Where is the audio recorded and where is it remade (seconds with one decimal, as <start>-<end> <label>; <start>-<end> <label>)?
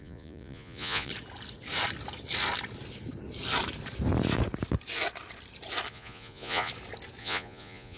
0.0-1.1 remade; 1.1-5.9 recorded; 5.9-6.7 remade; 6.7-7.2 recorded; 7.2-8.0 remade